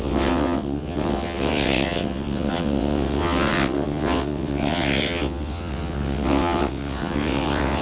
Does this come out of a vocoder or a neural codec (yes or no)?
yes